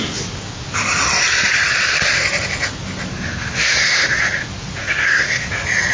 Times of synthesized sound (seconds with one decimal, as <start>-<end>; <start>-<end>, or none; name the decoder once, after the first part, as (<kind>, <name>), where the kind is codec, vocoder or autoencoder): 3.1-4.2 (codec, SNAC); 4.8-5.5